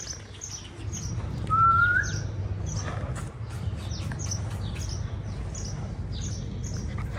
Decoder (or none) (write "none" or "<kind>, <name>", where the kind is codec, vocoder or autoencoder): none